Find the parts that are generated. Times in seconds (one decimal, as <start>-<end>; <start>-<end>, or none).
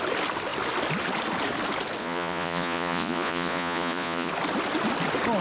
2.0-4.3